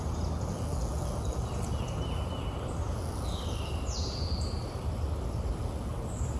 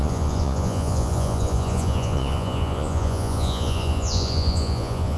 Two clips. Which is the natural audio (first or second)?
first